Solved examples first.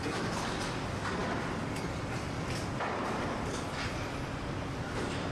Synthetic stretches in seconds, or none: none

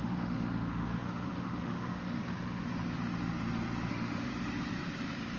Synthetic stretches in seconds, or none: 0.0-2.2 (autoencoder, DAC-VAE); 3.9-4.3

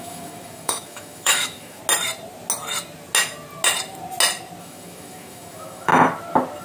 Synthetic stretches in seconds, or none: 0.0-1.8 (autoencoder, DAC-VAE); 4.6-5.9

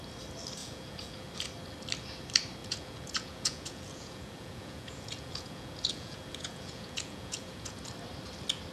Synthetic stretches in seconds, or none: 0.6-1.3 (vocoder, Vocos); 2.6-7.8

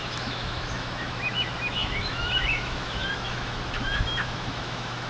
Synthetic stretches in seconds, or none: 0.0-5.1 (autoencoder, DAC-VAE)

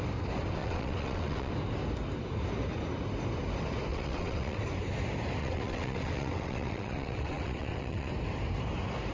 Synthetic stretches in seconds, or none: 0.6-1.5 (vocoder, WaveNeXt); 3.9-4.6; 5.4-8.1

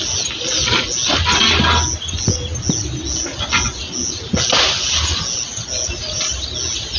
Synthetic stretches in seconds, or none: 6.0-6.5 (vocoder, BigVGAN v2)

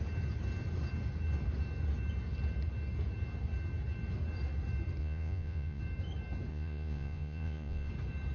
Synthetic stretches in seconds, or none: 5.0-5.8 (vocoder, Vocos); 6.5-7.9